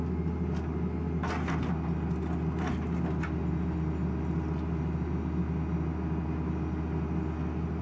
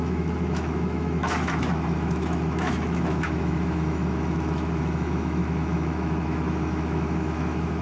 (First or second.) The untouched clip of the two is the first